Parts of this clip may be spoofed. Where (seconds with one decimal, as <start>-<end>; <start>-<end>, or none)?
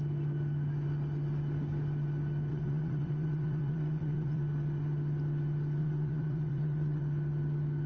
2.5-4.4; 5.8-7.0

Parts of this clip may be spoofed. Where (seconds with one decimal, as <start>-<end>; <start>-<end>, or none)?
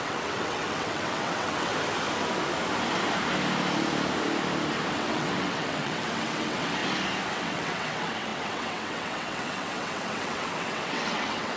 0.0-1.7; 4.9-6.8; 7.3-11.6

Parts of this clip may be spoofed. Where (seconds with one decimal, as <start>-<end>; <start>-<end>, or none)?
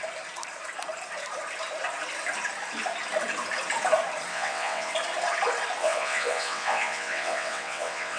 4.3-4.9; 5.8-8.2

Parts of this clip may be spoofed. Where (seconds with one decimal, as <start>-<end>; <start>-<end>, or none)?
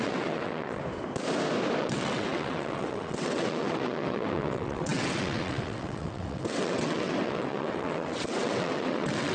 0.0-0.8; 1.8-9.3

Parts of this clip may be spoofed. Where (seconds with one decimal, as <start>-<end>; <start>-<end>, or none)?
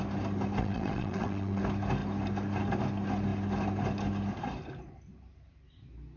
0.6-1.6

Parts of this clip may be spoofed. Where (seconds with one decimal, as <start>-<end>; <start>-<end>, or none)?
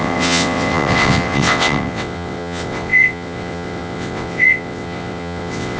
0.0-5.8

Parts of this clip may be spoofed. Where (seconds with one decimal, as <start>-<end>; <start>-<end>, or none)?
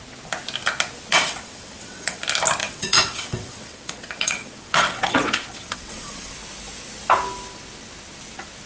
1.1-2.2; 2.6-6.3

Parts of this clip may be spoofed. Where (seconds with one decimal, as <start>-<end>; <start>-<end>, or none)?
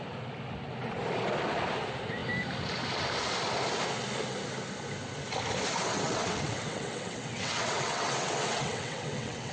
5.9-9.5